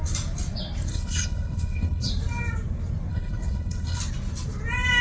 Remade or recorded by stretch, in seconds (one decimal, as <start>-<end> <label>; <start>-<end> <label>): 0.0-0.9 recorded; 0.9-2.1 remade; 2.1-3.1 recorded; 3.1-4.0 remade; 4.0-5.0 recorded